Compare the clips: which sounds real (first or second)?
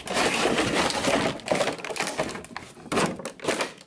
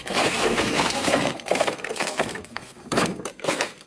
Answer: first